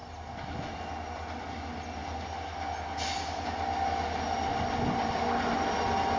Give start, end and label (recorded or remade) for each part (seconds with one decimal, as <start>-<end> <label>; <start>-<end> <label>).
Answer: 0.0-6.2 recorded

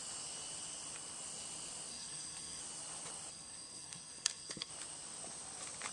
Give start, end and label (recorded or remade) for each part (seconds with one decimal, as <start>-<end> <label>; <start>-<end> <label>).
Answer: 0.0-1.9 recorded; 1.9-2.6 remade; 2.6-3.3 recorded; 3.3-4.7 remade; 4.7-5.9 recorded

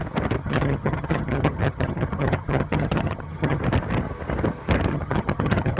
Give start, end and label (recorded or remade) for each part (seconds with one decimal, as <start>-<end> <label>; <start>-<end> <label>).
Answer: 0.0-0.4 recorded; 0.4-3.6 remade; 3.6-4.9 recorded; 4.9-5.8 remade